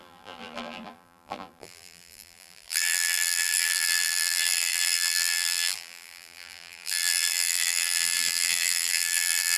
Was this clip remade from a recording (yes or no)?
yes